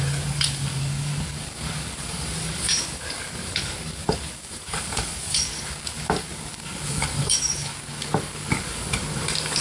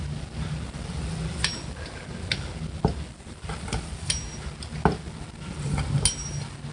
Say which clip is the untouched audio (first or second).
second